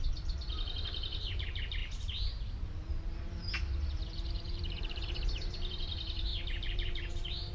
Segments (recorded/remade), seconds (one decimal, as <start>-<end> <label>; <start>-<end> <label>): 0.0-7.5 remade